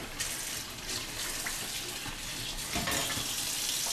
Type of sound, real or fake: real